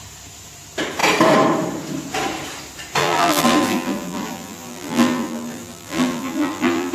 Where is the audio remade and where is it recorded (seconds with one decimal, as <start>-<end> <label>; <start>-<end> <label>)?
0.0-3.0 recorded; 3.0-6.9 remade